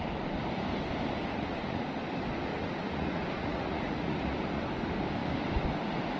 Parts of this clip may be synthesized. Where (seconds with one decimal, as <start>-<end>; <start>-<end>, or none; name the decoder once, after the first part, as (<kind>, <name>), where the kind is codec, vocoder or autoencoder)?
1.3-1.8 (vocoder, Vocos); 2.5-4.6